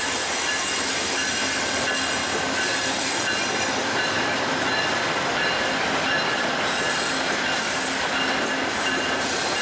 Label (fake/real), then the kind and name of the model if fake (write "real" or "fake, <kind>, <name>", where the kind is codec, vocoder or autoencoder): real